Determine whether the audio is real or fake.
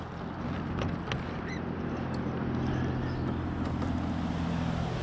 real